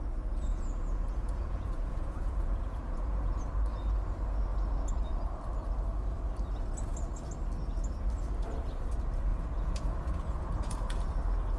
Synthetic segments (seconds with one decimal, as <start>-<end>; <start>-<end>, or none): 0.5-3.4; 9.3-11.1